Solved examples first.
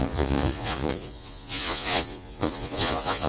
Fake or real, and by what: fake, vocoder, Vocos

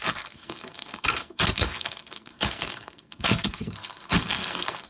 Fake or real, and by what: fake, codec, SNAC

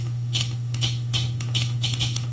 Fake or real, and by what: fake, autoencoder, DAC-VAE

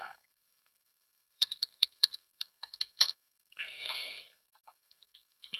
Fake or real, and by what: fake, codec, SNAC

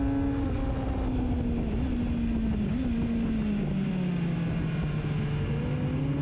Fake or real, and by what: real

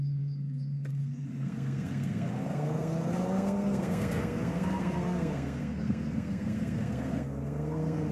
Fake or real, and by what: fake, codec, SNAC